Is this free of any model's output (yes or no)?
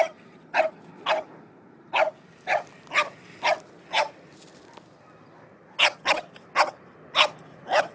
yes